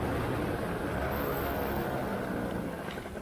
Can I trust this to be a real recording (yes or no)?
yes